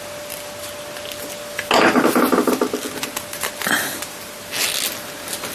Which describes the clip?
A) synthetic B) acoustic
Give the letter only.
B